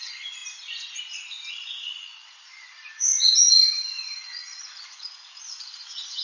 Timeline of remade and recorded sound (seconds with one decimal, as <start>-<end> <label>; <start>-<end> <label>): 0.0-0.4 remade; 0.4-1.5 recorded; 1.5-6.2 remade